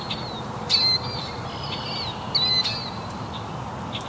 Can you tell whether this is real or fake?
real